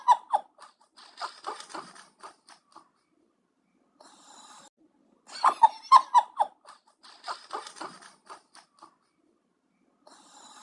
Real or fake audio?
real